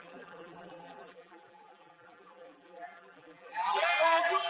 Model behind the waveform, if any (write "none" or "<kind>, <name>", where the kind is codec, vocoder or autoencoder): vocoder, BigVGAN v2